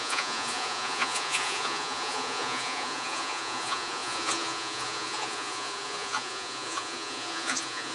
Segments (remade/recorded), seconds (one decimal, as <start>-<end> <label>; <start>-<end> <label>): 0.0-7.9 remade